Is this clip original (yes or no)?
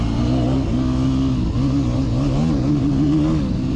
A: yes